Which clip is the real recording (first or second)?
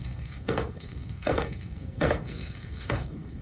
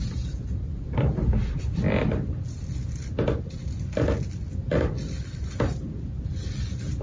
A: second